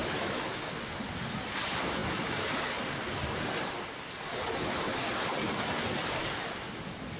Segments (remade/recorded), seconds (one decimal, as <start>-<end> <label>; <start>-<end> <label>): 0.0-0.6 remade; 0.6-7.2 recorded